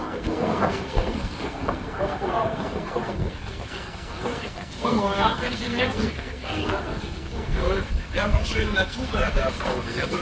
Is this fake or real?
fake